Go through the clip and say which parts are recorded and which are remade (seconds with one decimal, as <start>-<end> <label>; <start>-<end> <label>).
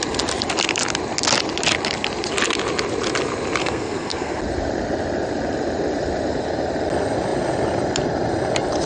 0.0-3.6 recorded; 3.6-4.4 remade; 4.4-8.9 recorded